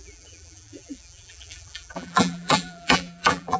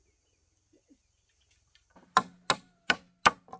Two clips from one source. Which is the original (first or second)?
second